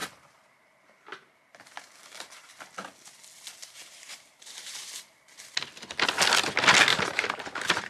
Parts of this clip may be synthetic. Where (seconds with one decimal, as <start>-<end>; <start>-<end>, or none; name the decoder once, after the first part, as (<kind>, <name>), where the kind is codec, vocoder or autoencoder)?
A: 0.0-2.5 (vocoder, BigVGAN v2); 3.6-4.9; 6.9-7.9